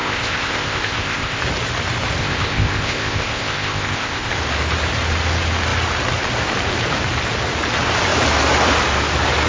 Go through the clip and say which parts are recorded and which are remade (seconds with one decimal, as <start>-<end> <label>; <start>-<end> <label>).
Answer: 0.0-1.4 remade; 1.4-2.2 recorded; 2.2-4.3 remade; 4.3-9.5 recorded